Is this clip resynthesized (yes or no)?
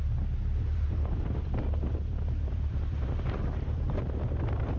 yes